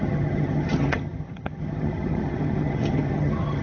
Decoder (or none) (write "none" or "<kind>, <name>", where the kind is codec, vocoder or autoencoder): vocoder, HiFi-GAN